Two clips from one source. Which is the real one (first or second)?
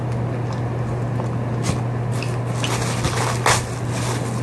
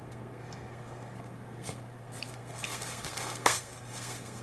first